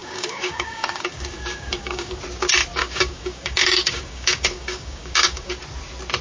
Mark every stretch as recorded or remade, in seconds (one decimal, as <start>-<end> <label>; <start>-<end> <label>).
0.0-2.2 remade; 2.2-2.8 recorded; 2.8-5.6 remade; 5.6-6.2 recorded